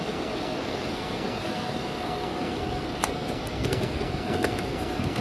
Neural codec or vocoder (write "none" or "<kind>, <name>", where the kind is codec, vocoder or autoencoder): codec, SNAC